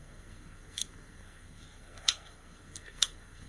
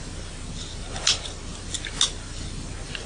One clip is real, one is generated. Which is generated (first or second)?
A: first